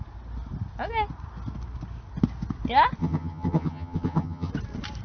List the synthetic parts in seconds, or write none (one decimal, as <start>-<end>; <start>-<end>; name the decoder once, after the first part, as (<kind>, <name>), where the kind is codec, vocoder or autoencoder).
3.0-4.5 (vocoder, HiFi-GAN)